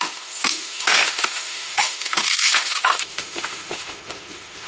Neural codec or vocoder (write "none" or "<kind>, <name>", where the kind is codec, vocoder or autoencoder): autoencoder, DAC-VAE